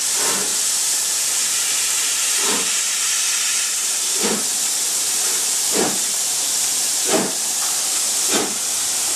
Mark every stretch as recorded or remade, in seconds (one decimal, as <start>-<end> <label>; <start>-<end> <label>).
0.0-0.5 recorded; 0.5-3.0 remade; 3.0-4.5 recorded; 4.5-8.0 remade; 8.0-9.2 recorded